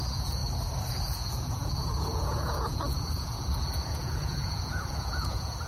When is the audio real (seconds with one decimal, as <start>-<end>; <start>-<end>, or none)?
0.4-0.9